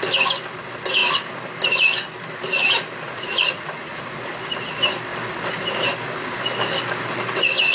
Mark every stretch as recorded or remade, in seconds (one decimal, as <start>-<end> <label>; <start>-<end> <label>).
0.0-3.0 recorded; 3.0-4.3 remade; 4.3-7.7 recorded